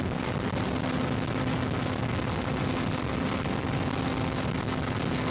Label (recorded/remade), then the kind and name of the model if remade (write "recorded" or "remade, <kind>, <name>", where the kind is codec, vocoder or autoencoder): recorded